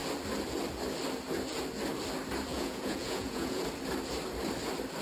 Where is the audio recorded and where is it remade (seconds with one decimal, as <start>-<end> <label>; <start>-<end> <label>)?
0.0-2.5 recorded; 2.5-3.6 remade; 3.6-5.0 recorded